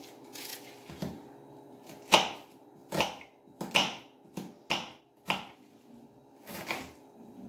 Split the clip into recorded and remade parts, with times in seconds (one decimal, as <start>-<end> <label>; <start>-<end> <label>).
0.0-7.5 recorded